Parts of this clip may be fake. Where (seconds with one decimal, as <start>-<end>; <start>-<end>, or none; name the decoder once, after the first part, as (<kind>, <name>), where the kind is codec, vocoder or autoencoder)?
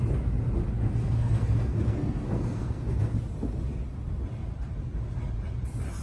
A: 0.8-3.2 (codec, SNAC)